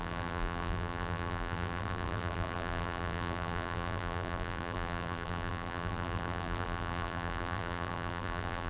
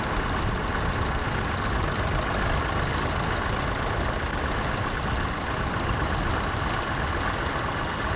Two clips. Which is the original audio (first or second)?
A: second